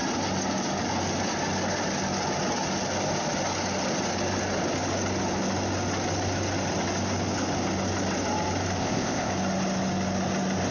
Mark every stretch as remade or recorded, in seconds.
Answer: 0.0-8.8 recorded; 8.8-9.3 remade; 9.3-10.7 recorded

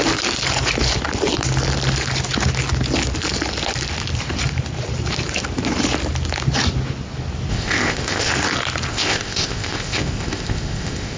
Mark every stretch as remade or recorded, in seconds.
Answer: 0.0-7.5 recorded; 7.5-8.3 remade; 8.3-8.9 recorded; 8.9-11.2 remade

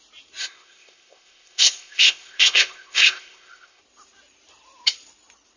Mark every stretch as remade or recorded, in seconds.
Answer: 0.0-0.4 recorded; 0.4-3.8 remade; 3.8-5.6 recorded

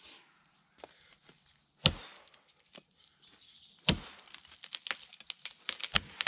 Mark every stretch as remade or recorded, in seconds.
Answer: 0.0-6.3 recorded

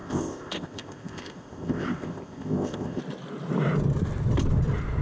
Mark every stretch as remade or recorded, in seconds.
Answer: 0.0-3.0 remade; 3.0-5.0 recorded

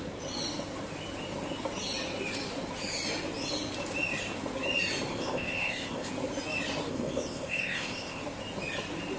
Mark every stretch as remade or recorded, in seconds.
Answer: 0.0-5.1 recorded; 5.1-6.1 remade; 6.1-6.9 recorded; 6.9-8.2 remade; 8.2-9.2 recorded

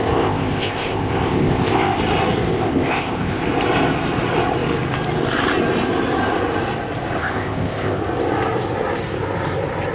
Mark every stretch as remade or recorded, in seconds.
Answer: 0.0-2.0 remade; 2.0-2.5 recorded; 2.5-3.4 remade; 3.4-7.2 recorded; 7.2-8.0 remade; 8.0-9.9 recorded

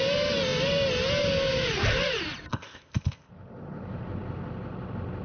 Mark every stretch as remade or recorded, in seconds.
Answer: 0.0-2.5 recorded; 2.5-3.3 remade; 3.3-5.2 recorded